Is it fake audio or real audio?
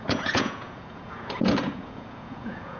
fake